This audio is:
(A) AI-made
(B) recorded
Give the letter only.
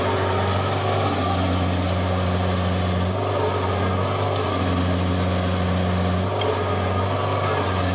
B